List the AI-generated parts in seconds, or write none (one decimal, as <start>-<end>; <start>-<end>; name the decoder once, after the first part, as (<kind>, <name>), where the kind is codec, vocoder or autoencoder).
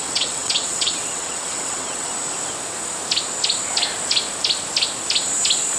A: 0.0-2.1 (vocoder, WaveNeXt)